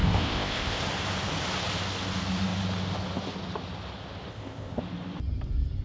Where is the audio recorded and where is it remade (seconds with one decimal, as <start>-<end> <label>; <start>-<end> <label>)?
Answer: 0.0-0.8 remade; 0.8-4.3 recorded; 4.3-4.8 remade; 4.8-5.8 recorded